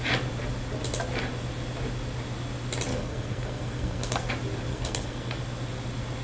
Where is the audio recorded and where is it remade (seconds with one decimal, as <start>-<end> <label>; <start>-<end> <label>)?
0.0-2.9 recorded; 2.9-4.3 remade; 4.3-4.7 recorded; 4.7-5.4 remade; 5.4-6.2 recorded